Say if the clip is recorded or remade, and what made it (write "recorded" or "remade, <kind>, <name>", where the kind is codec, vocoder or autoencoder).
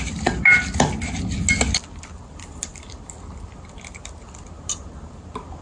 recorded